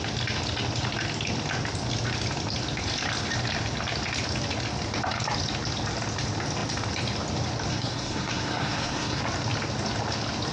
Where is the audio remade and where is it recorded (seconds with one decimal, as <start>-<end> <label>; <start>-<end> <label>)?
0.0-7.7 recorded; 7.7-9.2 remade; 9.2-10.5 recorded